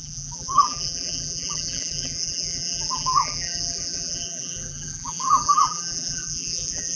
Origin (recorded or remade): remade